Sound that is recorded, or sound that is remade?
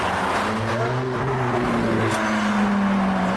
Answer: recorded